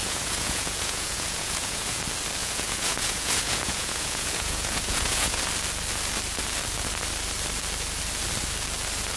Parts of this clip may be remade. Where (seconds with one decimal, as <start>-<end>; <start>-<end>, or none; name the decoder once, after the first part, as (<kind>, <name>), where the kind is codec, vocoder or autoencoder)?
0.0-2.0 (vocoder, Vocos); 2.4-5.4